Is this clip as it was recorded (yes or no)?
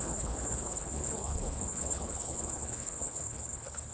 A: no